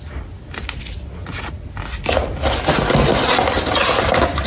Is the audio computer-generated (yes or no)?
no